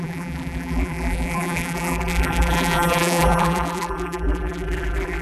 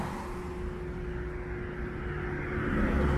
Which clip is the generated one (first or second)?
first